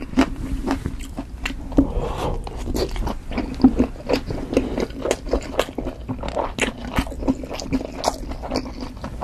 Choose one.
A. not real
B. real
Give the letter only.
B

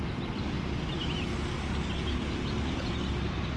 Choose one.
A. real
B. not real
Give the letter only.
A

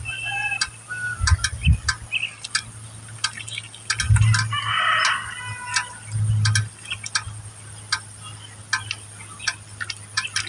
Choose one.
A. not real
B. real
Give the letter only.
B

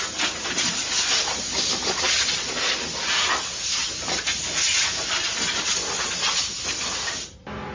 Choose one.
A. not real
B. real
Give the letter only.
B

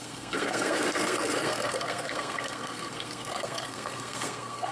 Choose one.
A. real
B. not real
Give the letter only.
B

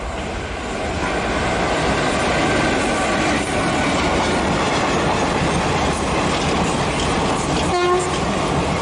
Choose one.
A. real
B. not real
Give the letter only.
A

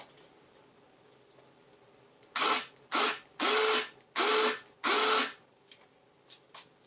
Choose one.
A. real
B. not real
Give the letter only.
A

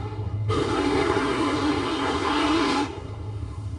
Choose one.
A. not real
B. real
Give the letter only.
A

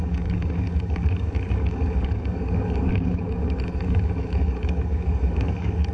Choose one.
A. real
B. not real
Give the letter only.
B